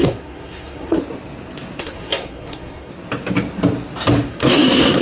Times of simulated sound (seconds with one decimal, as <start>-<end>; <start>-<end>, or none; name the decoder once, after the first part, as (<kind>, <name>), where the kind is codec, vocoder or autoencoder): 0.0-1.0 (codec, SNAC); 1.8-2.9; 4.3-5.0